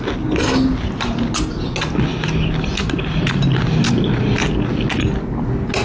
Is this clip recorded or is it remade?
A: recorded